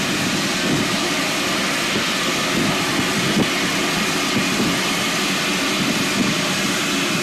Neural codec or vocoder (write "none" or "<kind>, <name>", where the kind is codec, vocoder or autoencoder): none